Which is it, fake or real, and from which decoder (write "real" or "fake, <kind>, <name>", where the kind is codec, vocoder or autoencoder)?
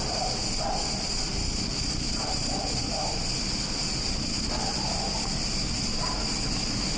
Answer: fake, vocoder, BigVGAN v2